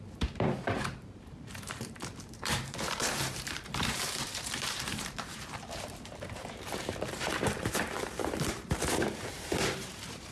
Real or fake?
fake